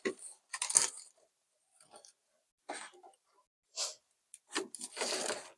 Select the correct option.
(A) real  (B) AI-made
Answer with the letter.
A